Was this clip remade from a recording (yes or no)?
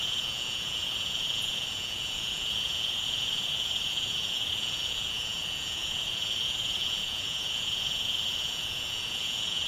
yes